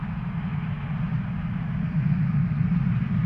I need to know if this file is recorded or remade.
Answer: recorded